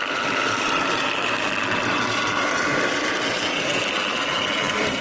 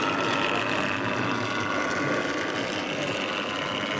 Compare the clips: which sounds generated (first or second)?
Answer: first